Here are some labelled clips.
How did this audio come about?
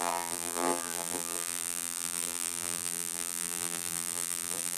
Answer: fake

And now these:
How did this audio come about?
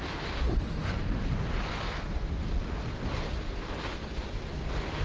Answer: real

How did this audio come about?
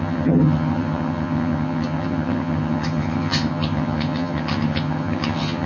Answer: fake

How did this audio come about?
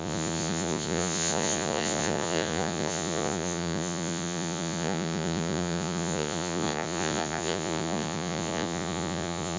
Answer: fake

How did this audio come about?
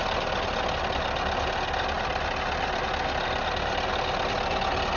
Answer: real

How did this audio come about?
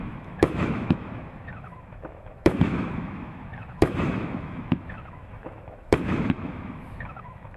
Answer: fake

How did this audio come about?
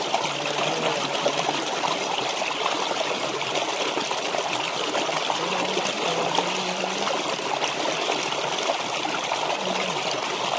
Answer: real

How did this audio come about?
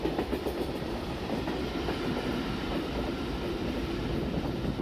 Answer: fake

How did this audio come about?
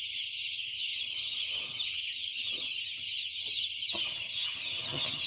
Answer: fake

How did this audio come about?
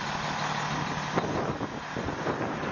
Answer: real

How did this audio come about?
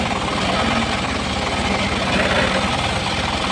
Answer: real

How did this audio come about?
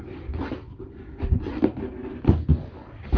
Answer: real